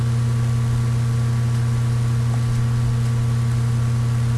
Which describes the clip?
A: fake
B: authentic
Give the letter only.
B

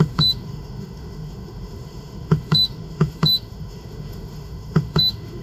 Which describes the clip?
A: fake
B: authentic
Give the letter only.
A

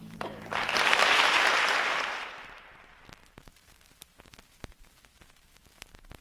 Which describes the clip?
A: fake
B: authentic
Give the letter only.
A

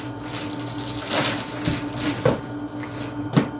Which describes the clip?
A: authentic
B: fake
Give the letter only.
A